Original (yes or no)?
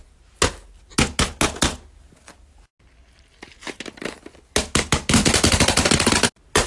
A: yes